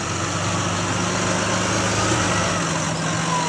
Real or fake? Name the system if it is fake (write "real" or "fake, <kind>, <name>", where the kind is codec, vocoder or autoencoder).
real